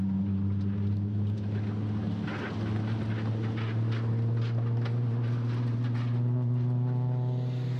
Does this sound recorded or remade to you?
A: recorded